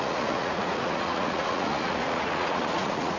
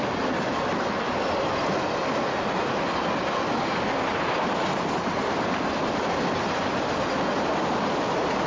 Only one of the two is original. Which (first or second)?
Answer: second